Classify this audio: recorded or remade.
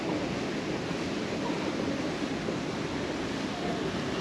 recorded